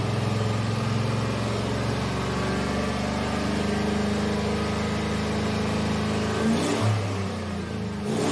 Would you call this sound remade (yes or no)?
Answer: no